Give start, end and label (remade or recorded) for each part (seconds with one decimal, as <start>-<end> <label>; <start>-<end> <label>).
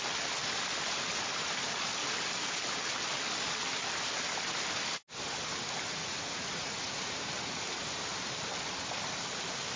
0.0-6.0 recorded; 6.0-7.1 remade; 7.1-9.8 recorded